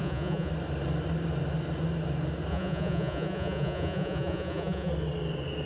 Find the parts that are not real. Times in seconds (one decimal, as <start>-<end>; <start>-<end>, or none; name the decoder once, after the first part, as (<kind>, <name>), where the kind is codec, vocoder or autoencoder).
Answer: 0.0-0.5 (vocoder, Vocos); 2.5-4.9